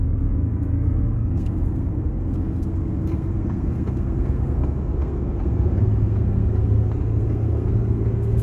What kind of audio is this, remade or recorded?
remade